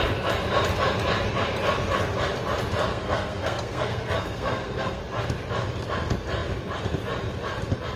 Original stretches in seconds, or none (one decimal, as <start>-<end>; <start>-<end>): 0.0-2.9; 5.0-8.0